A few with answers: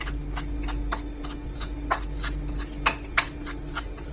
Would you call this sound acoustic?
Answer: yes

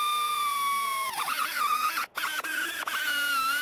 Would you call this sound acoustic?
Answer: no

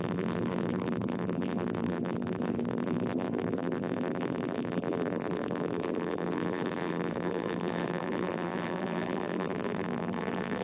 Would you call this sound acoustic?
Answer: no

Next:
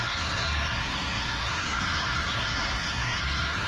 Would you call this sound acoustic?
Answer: no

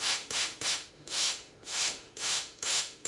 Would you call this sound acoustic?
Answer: no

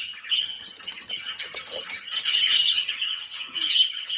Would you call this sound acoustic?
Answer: no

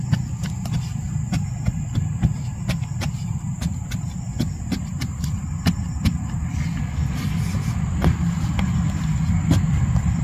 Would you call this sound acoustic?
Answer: yes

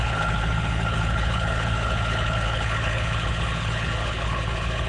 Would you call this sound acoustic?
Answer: no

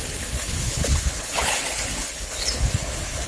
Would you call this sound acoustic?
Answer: no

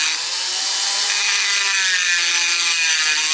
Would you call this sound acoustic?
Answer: yes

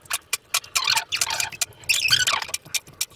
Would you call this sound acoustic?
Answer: yes